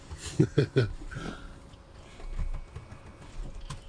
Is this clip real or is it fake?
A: real